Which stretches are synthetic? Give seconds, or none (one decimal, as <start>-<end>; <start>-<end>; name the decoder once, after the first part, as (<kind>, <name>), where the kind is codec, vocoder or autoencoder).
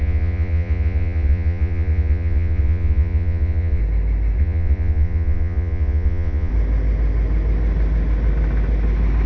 0.0-3.8 (vocoder, Vocos); 4.4-6.5